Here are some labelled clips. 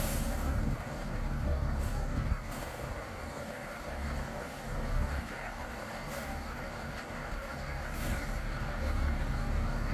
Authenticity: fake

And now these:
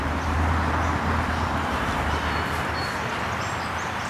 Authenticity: real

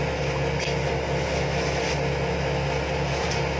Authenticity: real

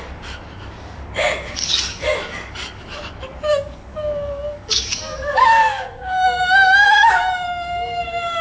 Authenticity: fake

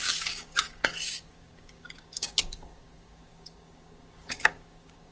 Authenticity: fake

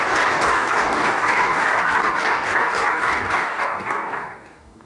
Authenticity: fake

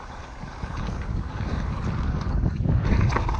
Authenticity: fake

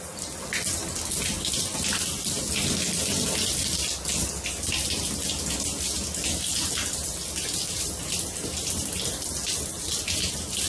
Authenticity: real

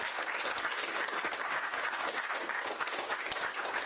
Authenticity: fake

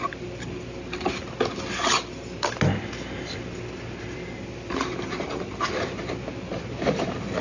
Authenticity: real